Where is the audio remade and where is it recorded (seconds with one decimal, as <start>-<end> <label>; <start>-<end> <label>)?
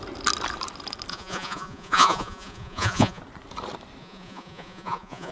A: 0.0-1.1 recorded; 1.1-3.2 remade; 3.2-4.0 recorded; 4.0-5.3 remade